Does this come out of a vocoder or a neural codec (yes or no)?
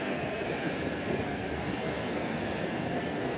yes